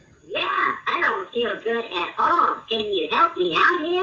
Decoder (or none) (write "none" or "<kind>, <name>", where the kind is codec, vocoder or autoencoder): codec, DAC